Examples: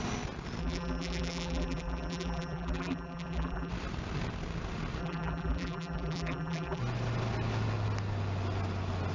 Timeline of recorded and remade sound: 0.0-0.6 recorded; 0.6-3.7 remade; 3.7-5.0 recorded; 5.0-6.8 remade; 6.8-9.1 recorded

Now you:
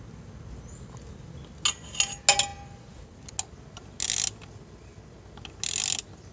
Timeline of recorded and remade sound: 0.0-6.3 recorded

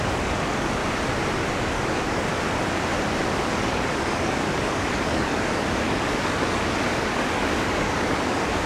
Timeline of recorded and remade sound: 0.0-0.8 remade; 0.8-1.5 recorded; 1.5-2.3 remade; 2.3-3.2 recorded; 3.2-8.7 remade

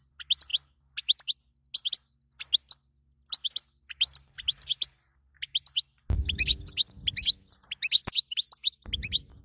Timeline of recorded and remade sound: 0.0-9.4 recorded

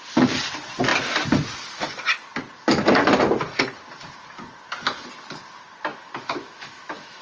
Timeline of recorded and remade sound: 0.0-5.9 recorded; 5.9-7.2 remade

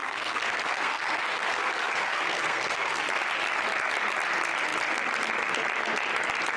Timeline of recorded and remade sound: 0.0-3.0 remade; 3.0-6.6 recorded